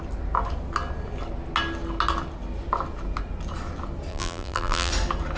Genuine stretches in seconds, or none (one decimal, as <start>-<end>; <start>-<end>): 0.0-4.1; 4.9-5.4